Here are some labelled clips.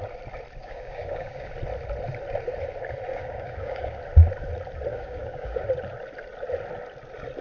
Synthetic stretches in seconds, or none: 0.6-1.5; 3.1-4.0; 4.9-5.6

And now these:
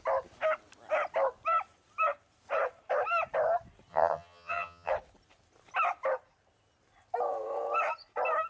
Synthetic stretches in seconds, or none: 3.9-4.9

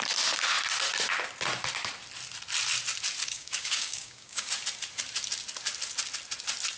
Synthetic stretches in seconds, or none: 3.2-4.5

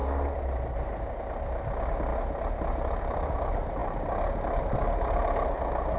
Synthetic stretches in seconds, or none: none

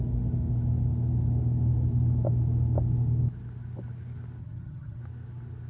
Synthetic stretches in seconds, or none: 4.4-5.0